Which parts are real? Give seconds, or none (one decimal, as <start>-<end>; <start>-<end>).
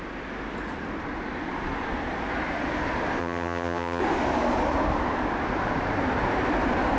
0.0-3.2; 4.0-7.0